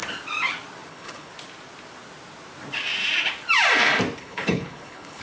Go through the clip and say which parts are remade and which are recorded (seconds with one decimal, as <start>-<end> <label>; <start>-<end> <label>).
0.0-0.9 recorded; 0.9-1.3 remade; 1.3-4.2 recorded; 4.2-5.2 remade